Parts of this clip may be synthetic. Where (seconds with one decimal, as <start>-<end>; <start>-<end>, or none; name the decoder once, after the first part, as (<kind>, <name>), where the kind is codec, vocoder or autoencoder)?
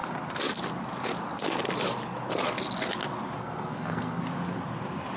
3.4-4.2 (codec, SNAC)